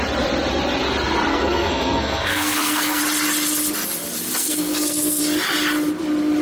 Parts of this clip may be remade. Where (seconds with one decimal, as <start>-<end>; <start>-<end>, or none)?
1.3-3.0; 4.4-5.2